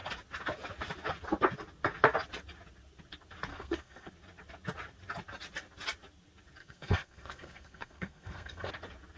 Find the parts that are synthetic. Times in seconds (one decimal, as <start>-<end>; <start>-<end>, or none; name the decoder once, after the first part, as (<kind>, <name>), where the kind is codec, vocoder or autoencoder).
3.5-4.1 (codec, SNAC); 6.6-8.7